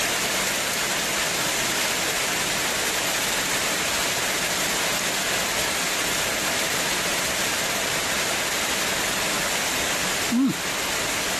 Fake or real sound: real